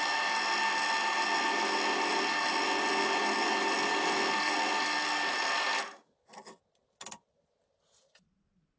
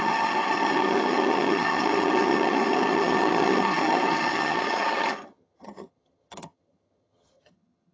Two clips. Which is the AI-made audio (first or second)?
second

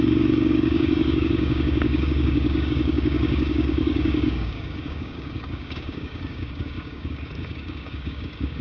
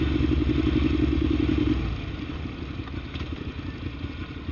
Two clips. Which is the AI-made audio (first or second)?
first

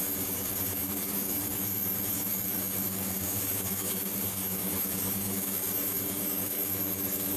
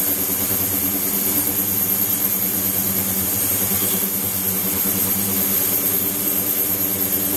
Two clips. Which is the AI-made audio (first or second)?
first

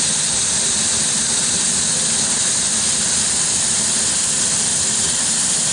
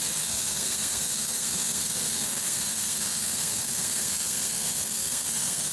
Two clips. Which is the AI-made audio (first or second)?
second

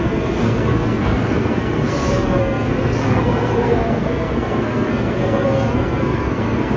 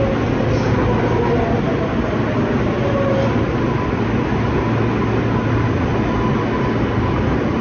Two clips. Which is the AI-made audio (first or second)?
first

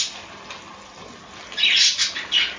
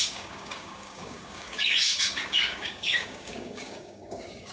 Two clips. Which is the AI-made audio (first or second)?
second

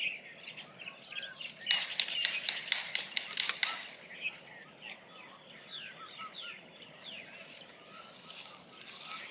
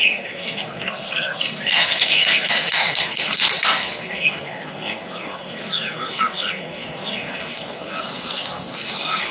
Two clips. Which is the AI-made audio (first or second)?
second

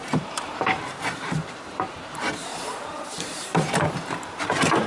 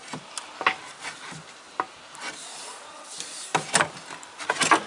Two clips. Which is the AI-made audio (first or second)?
first